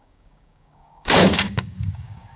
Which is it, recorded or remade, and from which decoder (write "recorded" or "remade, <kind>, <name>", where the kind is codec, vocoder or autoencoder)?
remade, codec, DAC